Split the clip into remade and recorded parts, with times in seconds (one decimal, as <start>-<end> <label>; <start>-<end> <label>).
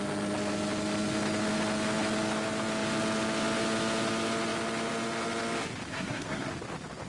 0.0-5.9 recorded; 5.9-6.5 remade; 6.5-7.1 recorded